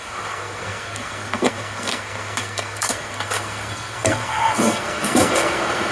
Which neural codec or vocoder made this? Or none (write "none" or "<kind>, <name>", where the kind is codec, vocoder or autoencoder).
codec, SNAC